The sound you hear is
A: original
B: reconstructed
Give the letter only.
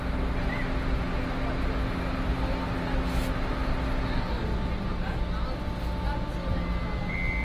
A